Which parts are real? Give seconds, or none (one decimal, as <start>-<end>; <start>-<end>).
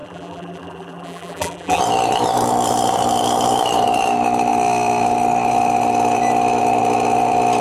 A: 1.8-7.6